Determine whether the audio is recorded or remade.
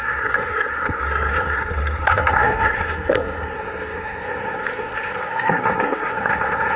remade